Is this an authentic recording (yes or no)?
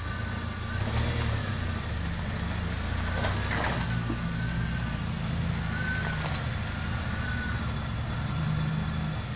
yes